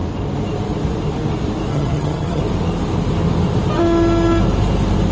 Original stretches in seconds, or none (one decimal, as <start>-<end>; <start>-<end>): 0.0-1.7; 2.4-5.1